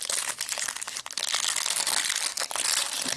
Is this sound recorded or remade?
recorded